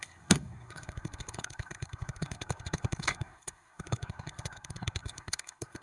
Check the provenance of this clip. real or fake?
fake